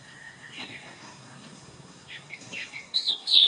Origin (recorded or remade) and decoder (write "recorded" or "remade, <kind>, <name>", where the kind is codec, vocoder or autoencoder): remade, codec, SNAC